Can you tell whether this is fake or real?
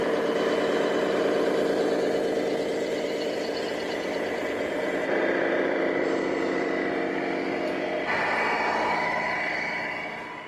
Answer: real